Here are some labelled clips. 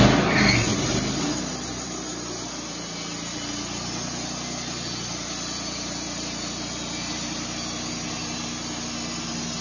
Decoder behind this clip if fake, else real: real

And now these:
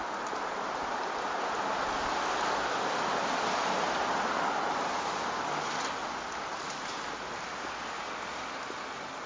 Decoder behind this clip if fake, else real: real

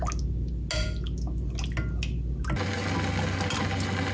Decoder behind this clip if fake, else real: real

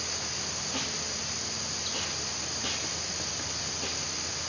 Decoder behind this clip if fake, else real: real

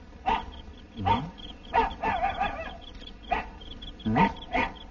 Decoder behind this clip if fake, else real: real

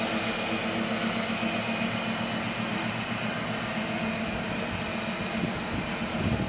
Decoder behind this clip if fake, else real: real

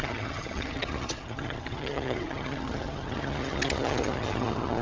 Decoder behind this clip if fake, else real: fake, vocoder, HiFi-GAN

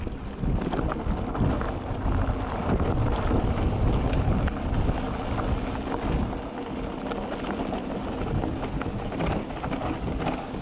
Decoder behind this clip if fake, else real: real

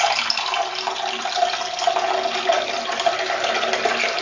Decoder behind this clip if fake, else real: real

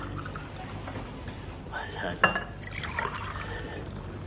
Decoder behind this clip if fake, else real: real